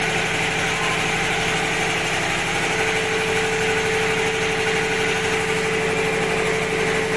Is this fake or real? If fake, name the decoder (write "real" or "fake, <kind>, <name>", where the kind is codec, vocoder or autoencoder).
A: real